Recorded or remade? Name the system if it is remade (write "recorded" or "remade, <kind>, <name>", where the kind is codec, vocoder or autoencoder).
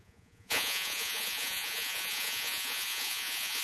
remade, vocoder, Vocos